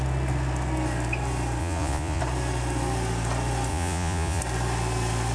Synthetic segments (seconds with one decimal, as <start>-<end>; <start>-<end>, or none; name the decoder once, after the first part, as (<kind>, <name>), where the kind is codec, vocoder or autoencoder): 1.6-2.2 (vocoder, Vocos); 3.7-4.4